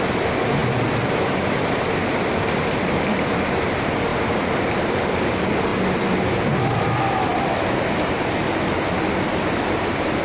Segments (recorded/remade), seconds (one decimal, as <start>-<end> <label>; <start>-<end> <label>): 0.0-0.6 remade; 0.6-1.2 recorded; 1.2-10.2 remade